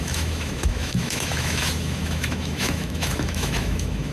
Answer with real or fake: fake